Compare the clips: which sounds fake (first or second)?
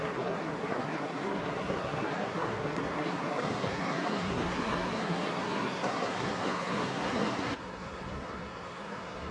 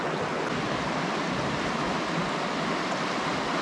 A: first